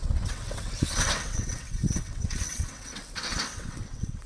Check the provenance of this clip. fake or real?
fake